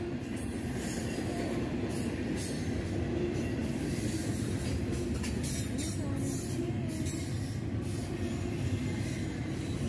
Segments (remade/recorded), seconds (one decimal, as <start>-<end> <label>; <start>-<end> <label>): 0.0-9.9 recorded